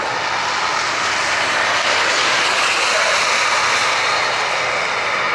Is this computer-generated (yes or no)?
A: no